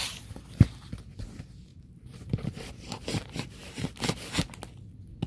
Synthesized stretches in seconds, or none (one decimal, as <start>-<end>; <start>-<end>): 1.7-2.7